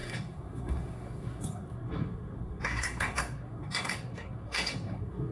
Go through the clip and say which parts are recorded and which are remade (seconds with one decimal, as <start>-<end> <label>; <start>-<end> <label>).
0.0-5.3 remade